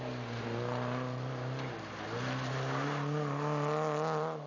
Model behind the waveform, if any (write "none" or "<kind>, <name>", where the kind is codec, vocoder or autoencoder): none